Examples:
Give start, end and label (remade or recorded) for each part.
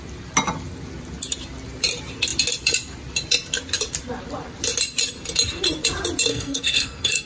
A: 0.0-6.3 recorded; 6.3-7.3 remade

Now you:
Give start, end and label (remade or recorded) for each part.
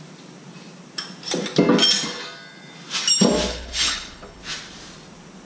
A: 0.0-3.5 recorded; 3.5-4.4 remade; 4.4-5.5 recorded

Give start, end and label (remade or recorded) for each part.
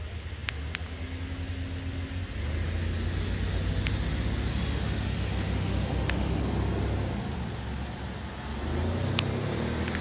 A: 0.0-4.5 recorded; 4.5-6.4 remade; 6.4-10.0 recorded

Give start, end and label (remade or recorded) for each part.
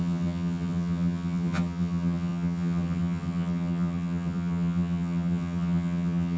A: 0.0-6.4 remade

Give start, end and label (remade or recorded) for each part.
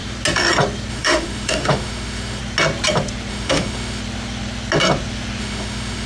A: 0.0-0.9 recorded; 0.9-2.4 remade; 2.4-3.3 recorded; 3.3-4.0 remade; 4.0-5.4 recorded; 5.4-6.1 remade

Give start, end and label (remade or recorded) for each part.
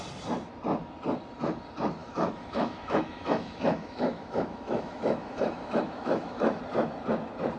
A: 0.0-2.0 recorded; 2.0-6.6 remade; 6.6-7.6 recorded